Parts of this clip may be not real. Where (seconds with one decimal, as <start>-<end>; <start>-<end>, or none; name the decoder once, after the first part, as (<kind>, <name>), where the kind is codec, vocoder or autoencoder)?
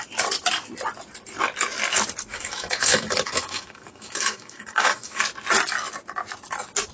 2.3-5.2 (autoencoder, DAC-VAE)